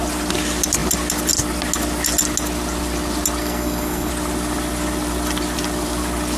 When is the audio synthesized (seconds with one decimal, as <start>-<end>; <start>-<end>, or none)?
3.4-4.1